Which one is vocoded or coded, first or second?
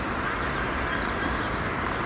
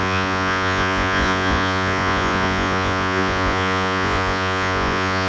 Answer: second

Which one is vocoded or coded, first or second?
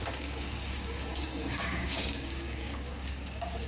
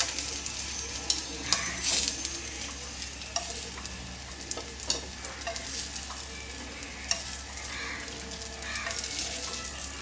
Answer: first